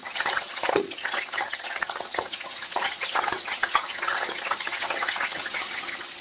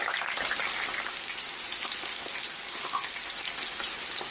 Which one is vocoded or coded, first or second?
first